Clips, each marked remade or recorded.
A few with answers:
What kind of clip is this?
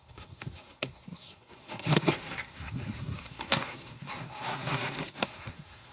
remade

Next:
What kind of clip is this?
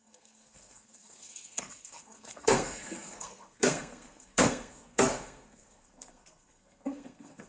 remade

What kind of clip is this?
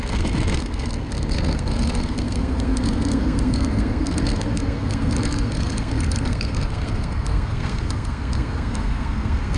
remade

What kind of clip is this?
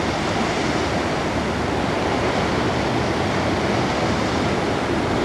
recorded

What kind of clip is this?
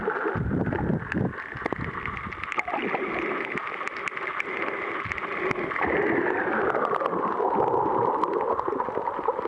recorded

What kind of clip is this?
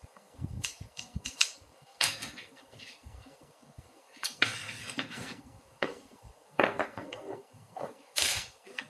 remade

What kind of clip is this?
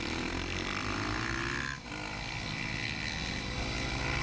recorded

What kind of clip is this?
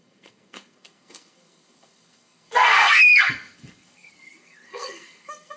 remade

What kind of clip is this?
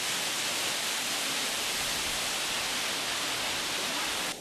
recorded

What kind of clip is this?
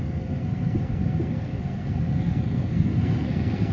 remade